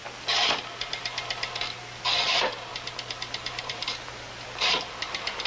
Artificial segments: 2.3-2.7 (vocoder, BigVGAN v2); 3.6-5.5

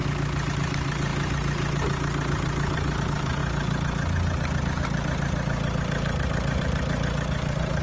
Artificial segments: 0.5-3.4 (vocoder, BigVGAN v2); 4.6-7.8

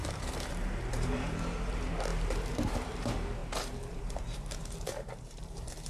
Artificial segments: 0.0-3.4 (vocoder, BigVGAN v2); 3.9-5.9

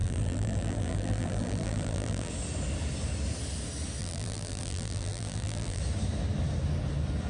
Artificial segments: 0.0-2.3 (vocoder, BigVGAN v2); 4.0-5.8